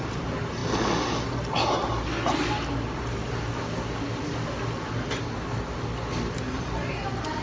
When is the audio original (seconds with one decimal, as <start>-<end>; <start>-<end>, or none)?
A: 0.6-1.2; 1.9-6.3